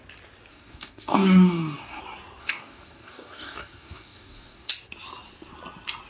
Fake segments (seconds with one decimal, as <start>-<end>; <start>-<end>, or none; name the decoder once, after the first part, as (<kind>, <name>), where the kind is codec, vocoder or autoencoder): 0.5-2.0 (codec, DAC); 2.4-4.7